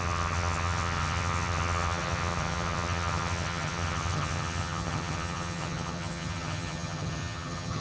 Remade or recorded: remade